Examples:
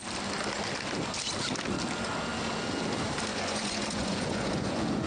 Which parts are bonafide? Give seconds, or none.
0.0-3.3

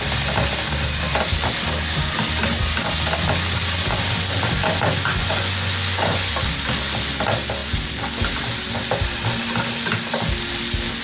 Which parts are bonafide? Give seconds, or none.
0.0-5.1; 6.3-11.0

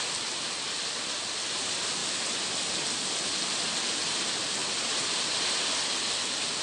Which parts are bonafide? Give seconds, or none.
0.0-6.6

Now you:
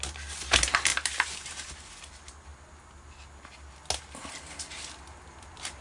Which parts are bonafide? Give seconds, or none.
0.0-5.8